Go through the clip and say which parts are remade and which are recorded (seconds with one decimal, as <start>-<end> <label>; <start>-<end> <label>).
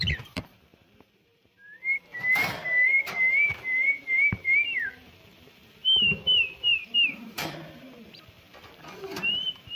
0.0-9.8 remade